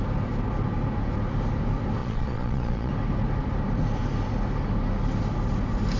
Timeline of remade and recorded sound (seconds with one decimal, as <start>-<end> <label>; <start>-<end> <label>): 0.0-2.0 recorded; 2.0-2.9 remade; 2.9-6.0 recorded